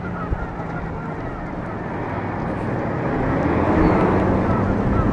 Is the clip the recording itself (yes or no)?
yes